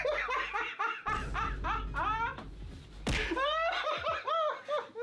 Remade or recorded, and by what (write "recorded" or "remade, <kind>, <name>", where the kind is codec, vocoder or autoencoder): recorded